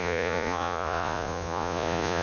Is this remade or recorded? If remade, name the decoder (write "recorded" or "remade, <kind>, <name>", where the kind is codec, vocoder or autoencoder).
remade, vocoder, Vocos